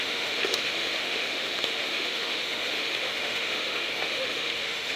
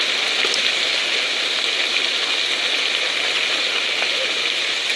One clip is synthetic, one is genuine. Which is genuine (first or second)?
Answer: second